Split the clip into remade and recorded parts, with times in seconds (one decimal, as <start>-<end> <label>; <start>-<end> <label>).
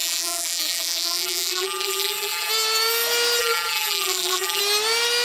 0.0-2.5 remade; 2.5-3.4 recorded; 3.4-4.6 remade; 4.6-5.2 recorded